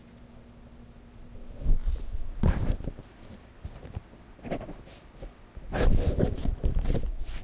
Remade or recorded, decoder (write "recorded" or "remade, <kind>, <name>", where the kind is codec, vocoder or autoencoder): recorded